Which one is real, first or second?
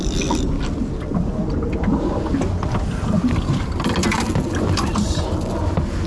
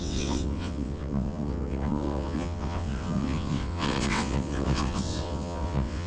first